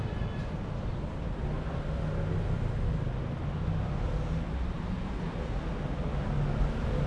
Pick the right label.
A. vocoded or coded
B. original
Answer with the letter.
B